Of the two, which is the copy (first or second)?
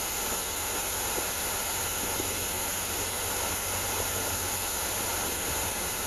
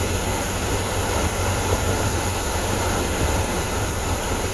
second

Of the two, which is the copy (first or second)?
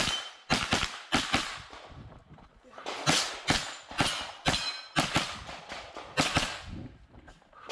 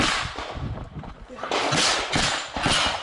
second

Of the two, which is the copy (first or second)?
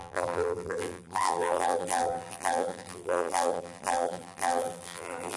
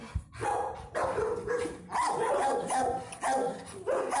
first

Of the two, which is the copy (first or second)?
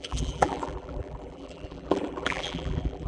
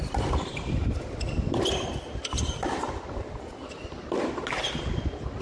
first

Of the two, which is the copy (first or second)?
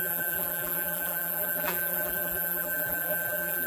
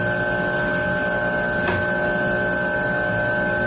first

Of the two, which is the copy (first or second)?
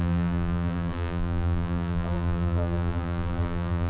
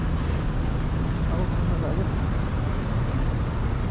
first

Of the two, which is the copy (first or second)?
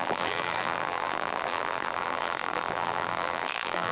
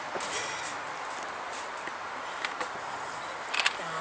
first